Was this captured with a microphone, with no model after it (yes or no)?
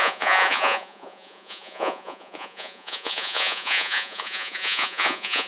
no